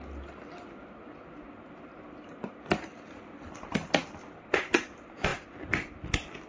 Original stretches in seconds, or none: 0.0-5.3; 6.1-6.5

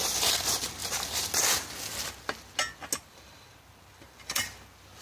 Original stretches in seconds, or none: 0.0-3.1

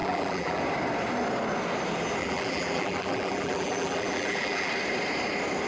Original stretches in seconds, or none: 0.6-2.2; 4.7-5.7

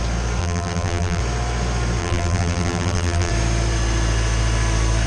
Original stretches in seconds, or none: 0.0-0.4; 1.2-2.0; 3.3-5.1

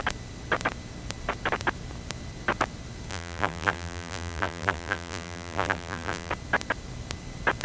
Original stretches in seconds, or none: 0.0-3.1; 6.3-7.6